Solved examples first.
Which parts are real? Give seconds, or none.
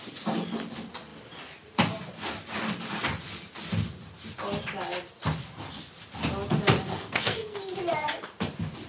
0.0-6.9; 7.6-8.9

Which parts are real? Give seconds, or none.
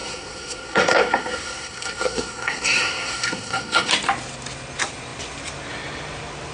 3.9-6.5